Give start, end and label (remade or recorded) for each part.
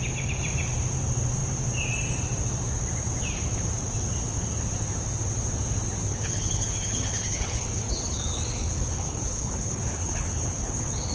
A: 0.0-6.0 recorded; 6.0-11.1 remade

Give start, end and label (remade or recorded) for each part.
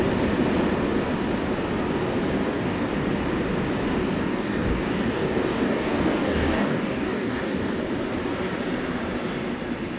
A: 0.0-2.4 recorded; 2.4-2.9 remade; 2.9-4.2 recorded; 4.2-7.7 remade; 7.7-10.0 recorded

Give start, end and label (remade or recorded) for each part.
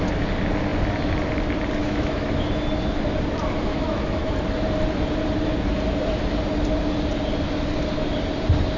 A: 0.0-1.8 recorded; 1.8-2.5 remade; 2.5-3.7 recorded; 3.7-4.3 remade; 4.3-8.8 recorded